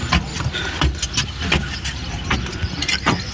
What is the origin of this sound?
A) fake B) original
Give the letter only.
B